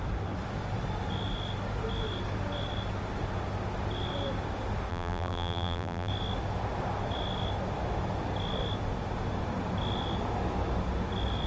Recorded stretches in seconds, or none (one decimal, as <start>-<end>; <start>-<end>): 0.0-4.9; 6.1-11.5